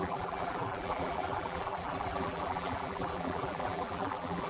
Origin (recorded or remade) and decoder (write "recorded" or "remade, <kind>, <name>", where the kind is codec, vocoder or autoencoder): remade, vocoder, BigVGAN v2